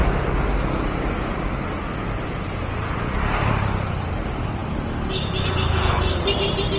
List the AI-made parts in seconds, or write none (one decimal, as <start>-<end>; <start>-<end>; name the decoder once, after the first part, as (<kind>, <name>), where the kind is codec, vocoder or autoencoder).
none

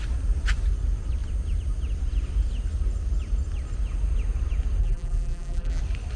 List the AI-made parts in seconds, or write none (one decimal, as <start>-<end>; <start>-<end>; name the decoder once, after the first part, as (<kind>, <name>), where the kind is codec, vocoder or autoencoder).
4.8-5.8 (vocoder, BigVGAN v2)

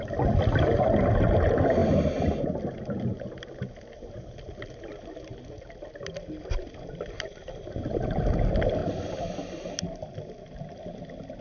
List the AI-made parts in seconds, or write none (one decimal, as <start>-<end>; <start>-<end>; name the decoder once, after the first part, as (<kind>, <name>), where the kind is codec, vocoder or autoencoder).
8.8-10.4 (vocoder, BigVGAN v2)